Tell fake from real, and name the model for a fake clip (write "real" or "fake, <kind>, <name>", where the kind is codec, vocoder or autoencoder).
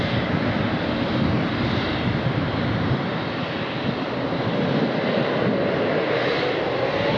real